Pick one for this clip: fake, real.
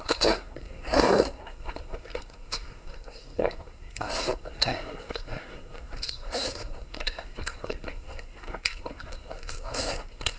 fake